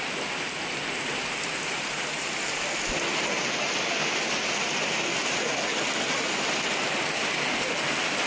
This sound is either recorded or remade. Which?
recorded